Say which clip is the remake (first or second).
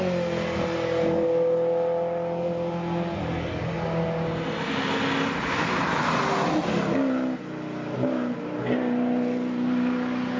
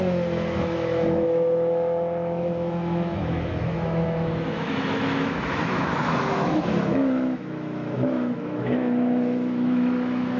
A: second